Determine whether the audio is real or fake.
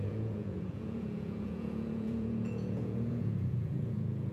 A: fake